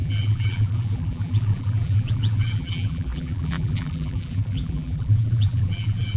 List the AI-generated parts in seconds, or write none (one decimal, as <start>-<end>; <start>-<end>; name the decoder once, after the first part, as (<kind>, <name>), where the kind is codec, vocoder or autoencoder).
0.0-6.2 (vocoder, BigVGAN v2)